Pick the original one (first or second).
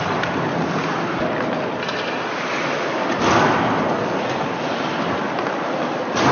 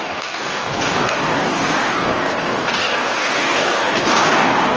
first